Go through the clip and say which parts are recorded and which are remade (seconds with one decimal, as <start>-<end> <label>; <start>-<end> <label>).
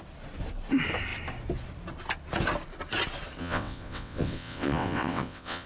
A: 0.0-3.4 recorded; 3.4-5.7 remade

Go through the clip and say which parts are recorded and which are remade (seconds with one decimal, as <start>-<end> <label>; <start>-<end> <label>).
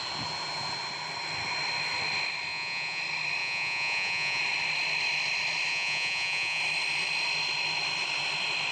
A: 0.0-2.5 recorded; 2.5-3.0 remade; 3.0-3.4 recorded; 3.4-4.4 remade; 4.4-5.7 recorded; 5.7-6.6 remade; 6.6-8.7 recorded